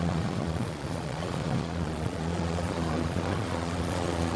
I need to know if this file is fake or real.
fake